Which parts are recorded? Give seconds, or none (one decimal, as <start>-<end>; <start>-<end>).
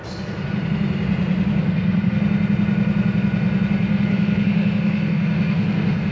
0.0-1.6; 2.2-3.9